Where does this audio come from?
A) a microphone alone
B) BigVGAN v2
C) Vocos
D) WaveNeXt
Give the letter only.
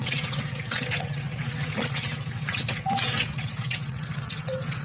D